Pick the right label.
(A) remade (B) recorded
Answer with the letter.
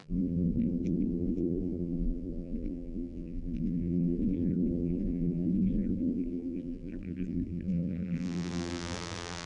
A